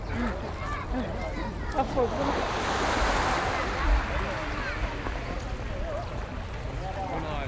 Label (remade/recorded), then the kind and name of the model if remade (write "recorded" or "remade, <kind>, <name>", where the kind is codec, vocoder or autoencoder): recorded